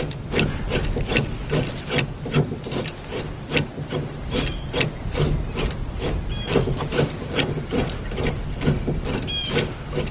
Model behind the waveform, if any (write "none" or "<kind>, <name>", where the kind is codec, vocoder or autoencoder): none